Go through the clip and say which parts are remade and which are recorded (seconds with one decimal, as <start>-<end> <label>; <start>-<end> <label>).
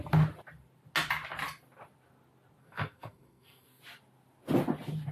0.0-2.6 recorded; 2.6-3.8 remade; 3.8-5.1 recorded